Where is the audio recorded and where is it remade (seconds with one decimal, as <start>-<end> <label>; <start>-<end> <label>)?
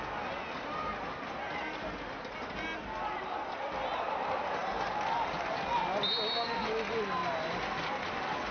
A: 0.0-8.5 recorded